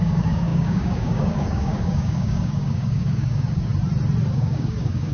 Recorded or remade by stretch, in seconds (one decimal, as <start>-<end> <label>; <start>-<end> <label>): 0.0-3.7 remade; 3.7-4.3 recorded; 4.3-5.1 remade

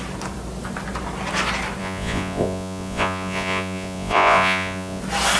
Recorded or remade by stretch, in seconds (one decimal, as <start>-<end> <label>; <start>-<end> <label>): 0.0-1.8 recorded; 1.8-5.0 remade; 5.0-5.4 recorded

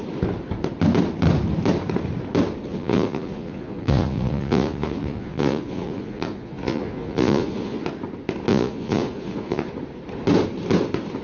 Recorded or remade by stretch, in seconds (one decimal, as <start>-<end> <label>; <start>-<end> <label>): 0.0-2.7 recorded; 2.7-7.8 remade; 7.8-8.5 recorded; 8.5-9.7 remade; 9.7-11.2 recorded

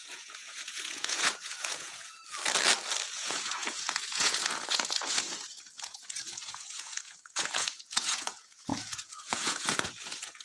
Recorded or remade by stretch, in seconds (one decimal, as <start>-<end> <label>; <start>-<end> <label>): 0.0-2.2 remade; 2.2-3.1 recorded; 3.1-10.4 remade

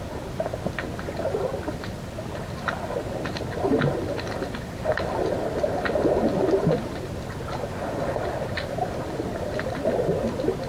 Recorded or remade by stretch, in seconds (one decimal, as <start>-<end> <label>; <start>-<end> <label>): 0.0-10.7 recorded

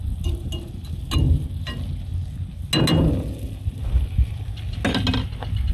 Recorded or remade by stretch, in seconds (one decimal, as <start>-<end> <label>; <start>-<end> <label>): 0.0-5.7 recorded

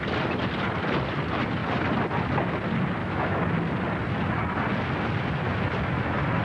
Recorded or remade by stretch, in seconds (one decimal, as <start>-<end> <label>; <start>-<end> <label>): 0.0-3.0 recorded; 3.0-3.5 remade; 3.5-6.4 recorded